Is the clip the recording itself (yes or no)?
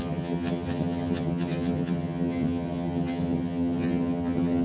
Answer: no